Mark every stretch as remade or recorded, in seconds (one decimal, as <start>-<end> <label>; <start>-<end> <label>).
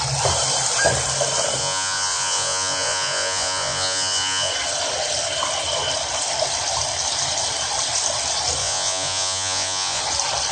0.0-1.6 recorded; 1.6-4.5 remade; 4.5-8.6 recorded; 8.6-10.0 remade; 10.0-10.5 recorded